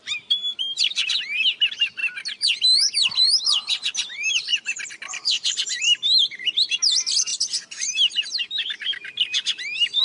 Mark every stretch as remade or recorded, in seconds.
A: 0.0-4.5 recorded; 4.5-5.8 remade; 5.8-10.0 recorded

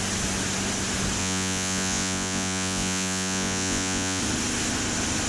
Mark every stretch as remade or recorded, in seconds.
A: 0.0-1.2 recorded; 1.2-4.2 remade; 4.2-5.3 recorded

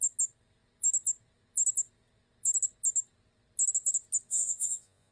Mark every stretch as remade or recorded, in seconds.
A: 0.0-4.3 recorded; 4.3-5.1 remade